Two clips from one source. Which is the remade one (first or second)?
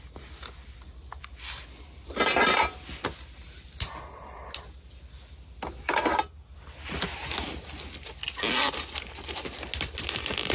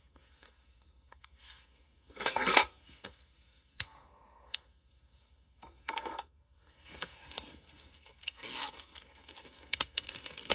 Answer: second